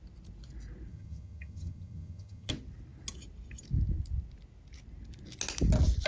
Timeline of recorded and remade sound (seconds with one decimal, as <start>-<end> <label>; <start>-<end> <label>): 0.0-0.9 recorded; 0.9-2.5 remade; 2.5-6.1 recorded